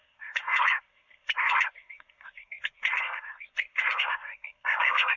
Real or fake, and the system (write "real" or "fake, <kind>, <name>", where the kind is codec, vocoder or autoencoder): fake, codec, SNAC